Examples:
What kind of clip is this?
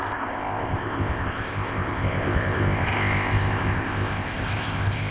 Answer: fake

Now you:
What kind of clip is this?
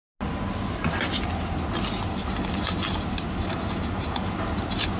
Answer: real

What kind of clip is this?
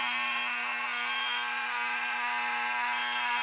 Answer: real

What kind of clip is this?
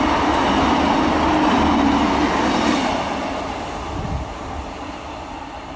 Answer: real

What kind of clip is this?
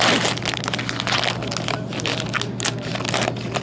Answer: real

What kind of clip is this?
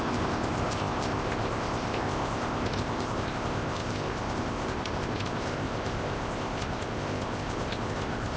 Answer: fake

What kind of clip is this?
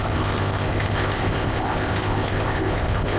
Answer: fake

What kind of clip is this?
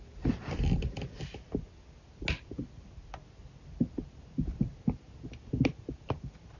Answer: real